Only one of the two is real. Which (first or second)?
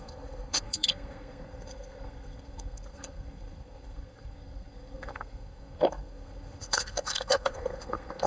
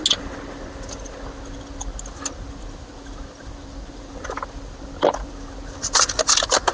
second